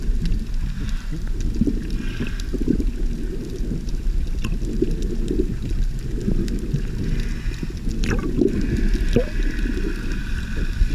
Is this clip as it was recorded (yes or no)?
yes